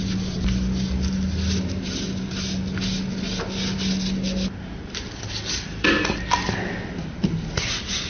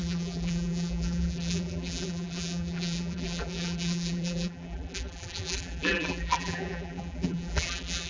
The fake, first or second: second